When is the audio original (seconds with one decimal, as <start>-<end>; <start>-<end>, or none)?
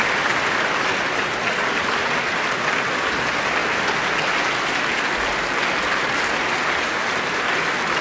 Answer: 0.0-8.0